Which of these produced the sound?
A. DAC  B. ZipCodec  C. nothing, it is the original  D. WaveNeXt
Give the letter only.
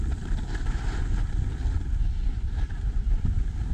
C